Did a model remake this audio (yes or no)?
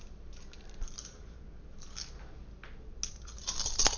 no